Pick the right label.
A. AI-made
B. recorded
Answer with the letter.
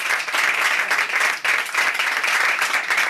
B